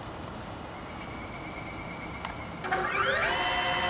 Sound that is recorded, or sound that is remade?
recorded